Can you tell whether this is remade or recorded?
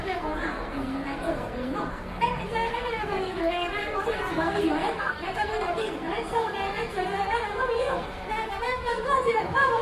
remade